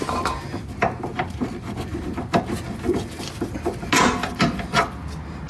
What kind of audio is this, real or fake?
real